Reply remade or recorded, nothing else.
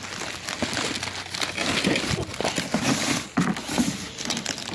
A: recorded